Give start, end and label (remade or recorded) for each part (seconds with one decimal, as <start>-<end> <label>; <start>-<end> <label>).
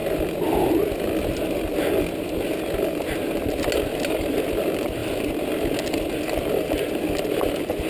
0.0-7.9 recorded